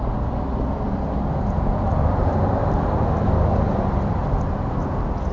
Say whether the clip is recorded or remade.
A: recorded